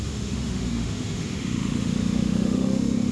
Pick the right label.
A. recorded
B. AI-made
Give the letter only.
B